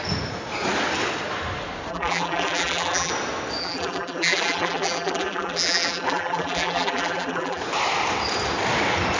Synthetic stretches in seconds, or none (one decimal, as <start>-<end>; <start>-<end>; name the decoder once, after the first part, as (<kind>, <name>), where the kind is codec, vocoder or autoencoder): 1.9-3.1 (vocoder, BigVGAN v2); 3.6-7.6